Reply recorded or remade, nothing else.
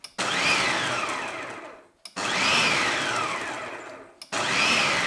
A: recorded